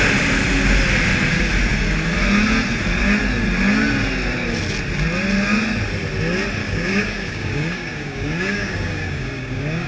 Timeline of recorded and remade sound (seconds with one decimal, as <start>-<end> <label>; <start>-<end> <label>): 0.0-6.6 recorded; 6.6-9.9 remade